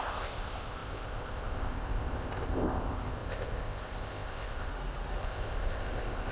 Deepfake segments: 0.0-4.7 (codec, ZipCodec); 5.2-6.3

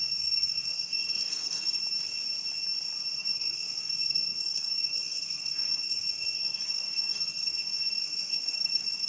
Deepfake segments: 0.0-1.8 (codec, SNAC); 3.2-9.1

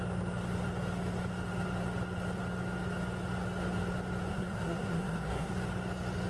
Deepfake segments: 4.3-5.5 (codec, SNAC)